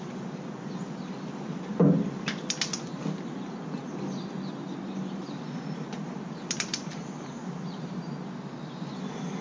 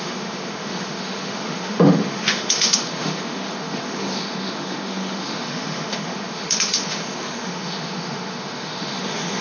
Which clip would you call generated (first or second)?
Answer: second